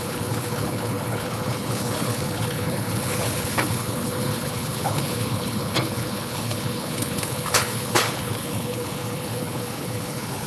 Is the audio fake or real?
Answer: fake